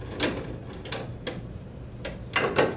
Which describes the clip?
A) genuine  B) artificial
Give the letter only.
A